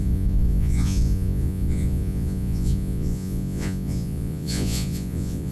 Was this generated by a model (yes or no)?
yes